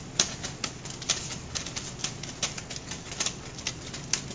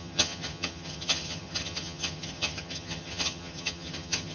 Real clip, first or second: first